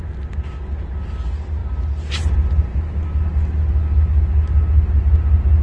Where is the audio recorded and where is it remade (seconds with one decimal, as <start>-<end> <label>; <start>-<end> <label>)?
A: 0.0-5.6 recorded